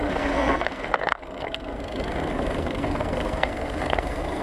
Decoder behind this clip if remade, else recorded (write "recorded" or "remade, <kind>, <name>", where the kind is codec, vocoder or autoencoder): remade, codec, SNAC